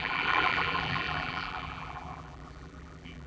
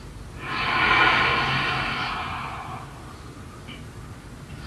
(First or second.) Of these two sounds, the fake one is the first